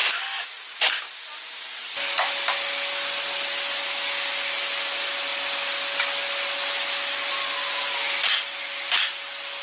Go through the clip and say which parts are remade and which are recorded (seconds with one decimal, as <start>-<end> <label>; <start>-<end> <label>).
0.0-9.6 recorded